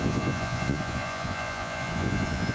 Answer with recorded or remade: remade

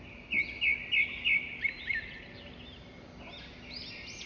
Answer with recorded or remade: recorded